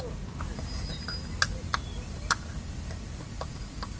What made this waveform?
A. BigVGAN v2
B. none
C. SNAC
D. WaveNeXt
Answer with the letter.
B